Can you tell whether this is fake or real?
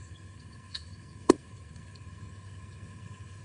fake